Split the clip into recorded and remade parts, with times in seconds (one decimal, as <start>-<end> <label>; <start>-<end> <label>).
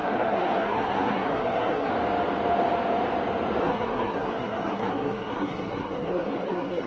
0.0-1.9 remade; 1.9-3.6 recorded; 3.6-6.9 remade